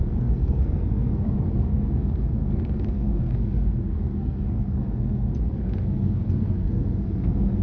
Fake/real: fake